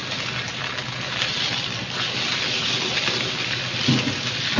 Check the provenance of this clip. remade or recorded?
recorded